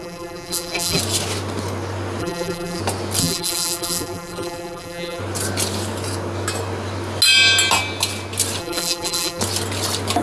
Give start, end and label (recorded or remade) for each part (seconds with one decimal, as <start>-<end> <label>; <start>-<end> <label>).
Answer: 0.0-1.0 remade; 1.0-2.2 recorded; 2.2-2.8 remade; 2.8-3.2 recorded; 3.2-5.2 remade; 5.2-8.6 recorded; 8.6-9.4 remade; 9.4-10.2 recorded